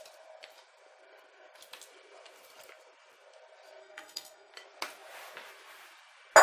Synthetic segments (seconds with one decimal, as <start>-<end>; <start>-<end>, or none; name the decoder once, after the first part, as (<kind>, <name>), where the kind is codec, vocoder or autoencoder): 3.8-4.5 (codec, SNAC)